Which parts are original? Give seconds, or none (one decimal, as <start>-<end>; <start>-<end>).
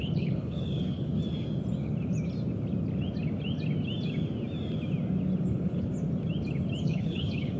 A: 1.1-5.4; 5.9-6.8